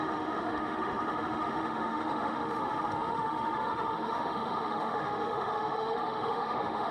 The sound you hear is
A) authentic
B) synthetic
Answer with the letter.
B